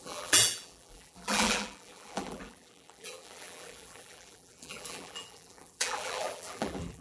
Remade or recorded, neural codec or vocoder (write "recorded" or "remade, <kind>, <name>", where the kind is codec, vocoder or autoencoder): remade, vocoder, BigVGAN v2